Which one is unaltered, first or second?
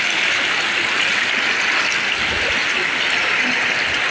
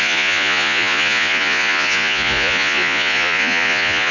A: first